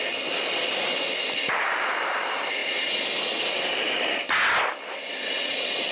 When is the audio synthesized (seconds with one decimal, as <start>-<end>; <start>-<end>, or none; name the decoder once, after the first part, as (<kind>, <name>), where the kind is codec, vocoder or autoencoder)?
none